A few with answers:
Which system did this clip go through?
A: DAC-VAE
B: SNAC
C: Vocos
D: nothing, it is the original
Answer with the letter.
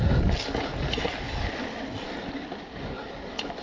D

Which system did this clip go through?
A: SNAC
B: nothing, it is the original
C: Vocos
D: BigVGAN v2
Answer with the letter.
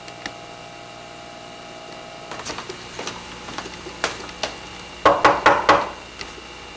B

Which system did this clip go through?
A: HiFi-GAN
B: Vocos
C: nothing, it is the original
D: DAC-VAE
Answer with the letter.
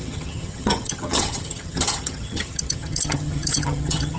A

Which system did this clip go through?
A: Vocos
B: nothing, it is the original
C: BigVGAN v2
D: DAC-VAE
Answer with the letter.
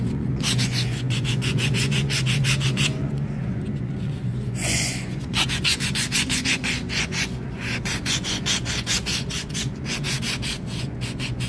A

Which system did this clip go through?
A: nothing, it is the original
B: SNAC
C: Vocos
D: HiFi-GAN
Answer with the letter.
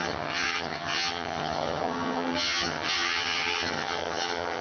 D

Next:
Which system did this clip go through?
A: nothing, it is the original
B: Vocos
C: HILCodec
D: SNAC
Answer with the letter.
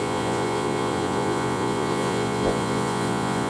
B